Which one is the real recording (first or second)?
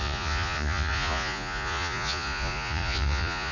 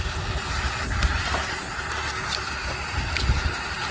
second